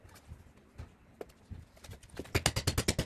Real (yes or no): yes